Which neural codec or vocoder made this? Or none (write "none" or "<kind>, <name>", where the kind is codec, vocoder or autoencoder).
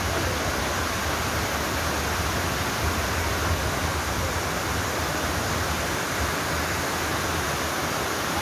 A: none